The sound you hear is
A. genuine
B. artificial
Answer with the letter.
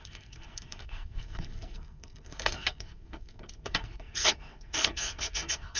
B